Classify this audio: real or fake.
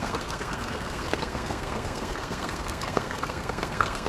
fake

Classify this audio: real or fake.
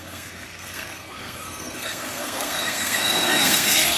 fake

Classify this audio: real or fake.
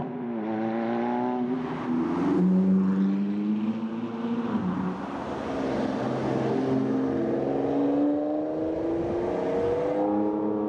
real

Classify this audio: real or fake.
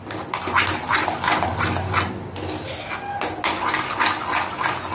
real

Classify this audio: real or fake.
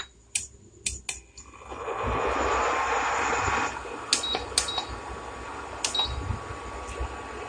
real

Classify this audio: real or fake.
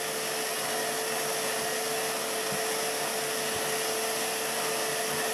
real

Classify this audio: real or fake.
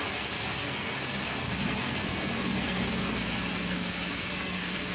fake